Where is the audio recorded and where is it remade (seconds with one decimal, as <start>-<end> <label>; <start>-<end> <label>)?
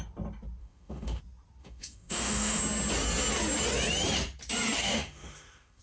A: 0.0-0.6 recorded; 0.6-1.2 remade; 1.2-1.6 recorded; 1.6-2.6 remade; 2.6-4.8 recorded; 4.8-5.8 remade